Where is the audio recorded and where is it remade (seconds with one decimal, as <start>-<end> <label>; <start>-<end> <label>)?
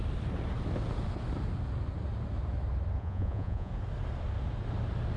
0.0-3.0 recorded; 3.0-3.7 remade; 3.7-5.2 recorded